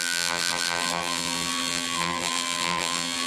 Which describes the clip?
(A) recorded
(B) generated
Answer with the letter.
B